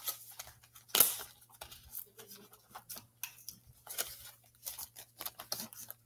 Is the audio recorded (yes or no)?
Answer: yes